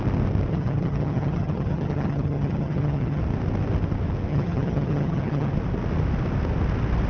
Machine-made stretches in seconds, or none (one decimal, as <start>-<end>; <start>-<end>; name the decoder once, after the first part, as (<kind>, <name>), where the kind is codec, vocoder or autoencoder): 0.5-3.2 (vocoder, HiFi-GAN); 4.3-5.5

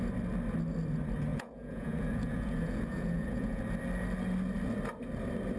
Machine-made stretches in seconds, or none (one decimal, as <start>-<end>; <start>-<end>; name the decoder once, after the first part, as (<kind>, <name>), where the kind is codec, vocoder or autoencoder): 1.3-3.6 (vocoder, Vocos)

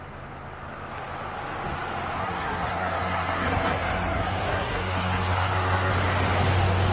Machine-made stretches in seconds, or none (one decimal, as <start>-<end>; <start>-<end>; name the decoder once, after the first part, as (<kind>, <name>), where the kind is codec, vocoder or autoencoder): 2.2-5.9 (codec, SNAC)